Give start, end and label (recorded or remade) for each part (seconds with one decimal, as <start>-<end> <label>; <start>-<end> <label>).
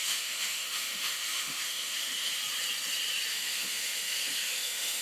0.0-2.3 remade; 2.3-3.3 recorded; 3.3-5.0 remade